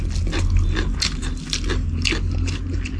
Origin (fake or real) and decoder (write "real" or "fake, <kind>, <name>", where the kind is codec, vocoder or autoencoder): real